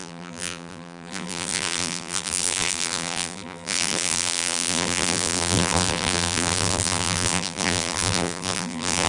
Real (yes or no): no